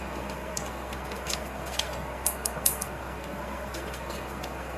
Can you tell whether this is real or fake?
fake